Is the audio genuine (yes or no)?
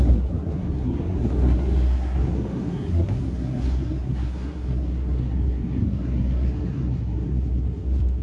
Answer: no